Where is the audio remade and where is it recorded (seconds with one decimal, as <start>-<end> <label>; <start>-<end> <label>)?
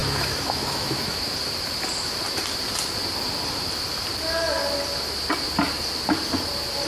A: 0.0-1.3 remade; 1.3-6.9 recorded